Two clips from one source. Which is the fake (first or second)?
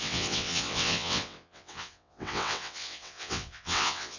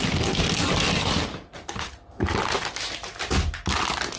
first